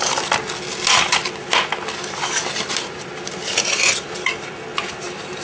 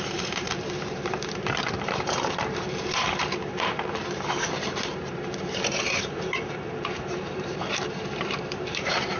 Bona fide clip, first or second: first